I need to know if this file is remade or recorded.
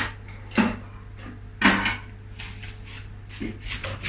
recorded